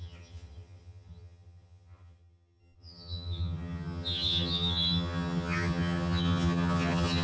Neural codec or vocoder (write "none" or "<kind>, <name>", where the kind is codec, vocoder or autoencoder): vocoder, HiFi-GAN